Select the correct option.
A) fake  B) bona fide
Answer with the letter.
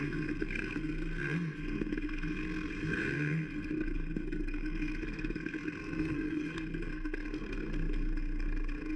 A